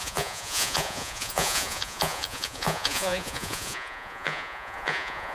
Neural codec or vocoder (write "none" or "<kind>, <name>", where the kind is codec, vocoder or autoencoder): vocoder, Vocos